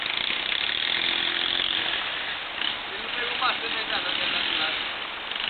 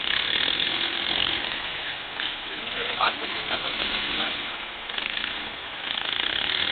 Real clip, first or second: first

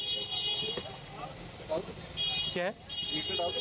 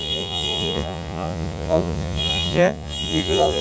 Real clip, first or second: first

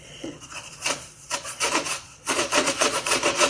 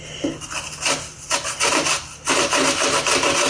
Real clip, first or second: second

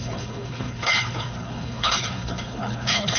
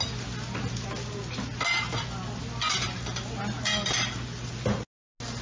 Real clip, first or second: second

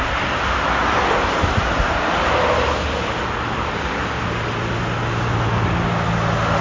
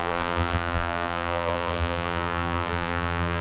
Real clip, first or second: first